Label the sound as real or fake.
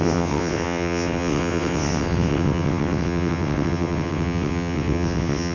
fake